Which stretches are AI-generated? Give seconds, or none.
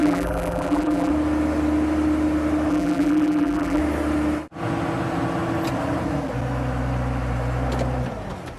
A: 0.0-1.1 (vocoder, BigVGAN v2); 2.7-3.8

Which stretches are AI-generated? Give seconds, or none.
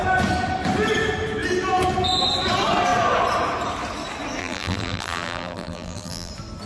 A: 4.4-6.3 (vocoder, BigVGAN v2)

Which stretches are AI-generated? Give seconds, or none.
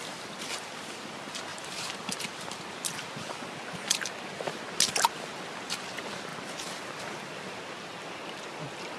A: 1.5-2.6 (vocoder, BigVGAN v2)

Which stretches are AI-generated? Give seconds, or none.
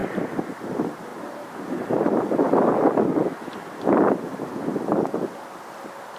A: 0.0-0.5 (vocoder, BigVGAN v2); 1.1-4.2